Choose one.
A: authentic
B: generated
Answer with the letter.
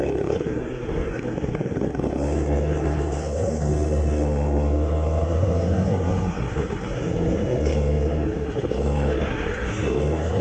B